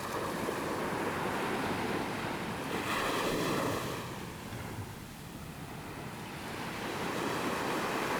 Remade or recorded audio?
remade